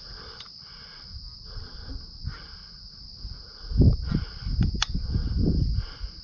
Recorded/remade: recorded